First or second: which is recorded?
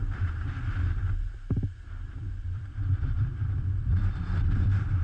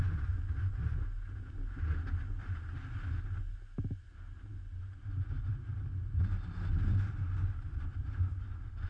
second